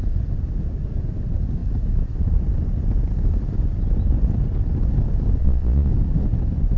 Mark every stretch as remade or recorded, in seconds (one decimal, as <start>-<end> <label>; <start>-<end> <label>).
0.0-5.4 recorded; 5.4-5.9 remade; 5.9-6.8 recorded